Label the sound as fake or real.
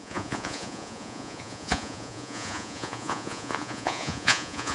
fake